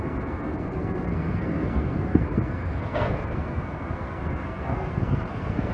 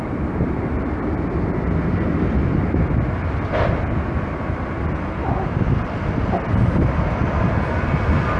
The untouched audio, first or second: second